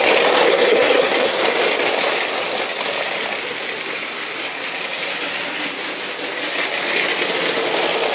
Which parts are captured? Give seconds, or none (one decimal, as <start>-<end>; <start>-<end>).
0.0-0.5; 1.4-8.1